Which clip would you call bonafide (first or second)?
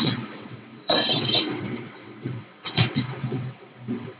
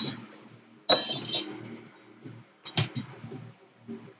second